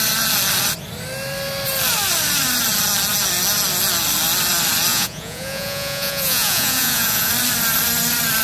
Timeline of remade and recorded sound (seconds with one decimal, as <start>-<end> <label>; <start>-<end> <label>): 0.0-4.9 recorded; 4.9-7.3 remade; 7.3-8.4 recorded

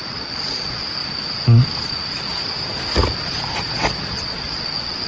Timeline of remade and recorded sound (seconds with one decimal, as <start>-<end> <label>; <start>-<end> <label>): 0.0-1.0 remade; 1.0-4.1 recorded; 4.1-5.1 remade

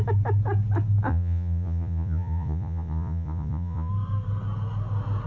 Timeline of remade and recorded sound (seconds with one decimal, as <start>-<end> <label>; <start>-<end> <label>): 0.0-1.1 recorded; 1.1-3.9 remade; 3.9-5.3 recorded

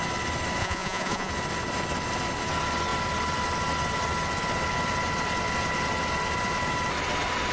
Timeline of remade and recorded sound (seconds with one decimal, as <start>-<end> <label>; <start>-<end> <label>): 0.0-0.6 recorded; 0.6-1.3 remade; 1.3-7.5 recorded

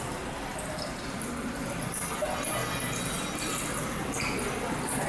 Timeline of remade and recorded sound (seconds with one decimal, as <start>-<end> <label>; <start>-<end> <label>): 0.0-5.1 recorded

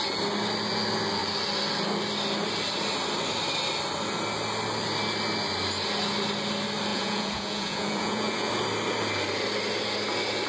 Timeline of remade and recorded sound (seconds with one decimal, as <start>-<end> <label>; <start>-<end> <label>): 0.0-6.9 recorded; 6.9-8.5 remade; 8.5-10.5 recorded

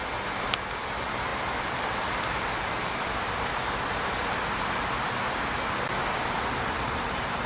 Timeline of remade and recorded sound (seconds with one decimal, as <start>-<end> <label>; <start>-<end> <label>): 0.0-7.5 recorded

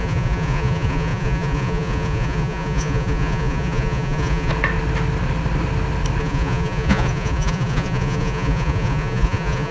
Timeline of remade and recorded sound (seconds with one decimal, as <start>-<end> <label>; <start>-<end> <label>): 0.0-4.5 remade; 4.5-6.2 recorded; 6.2-9.7 remade